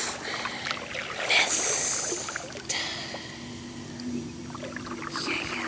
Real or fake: real